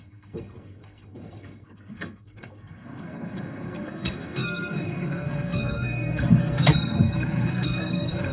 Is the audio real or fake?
fake